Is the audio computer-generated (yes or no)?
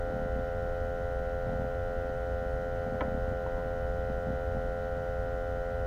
no